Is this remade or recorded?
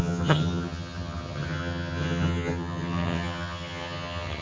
remade